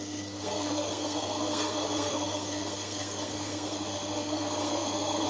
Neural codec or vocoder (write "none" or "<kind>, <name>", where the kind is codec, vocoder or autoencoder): codec, SNAC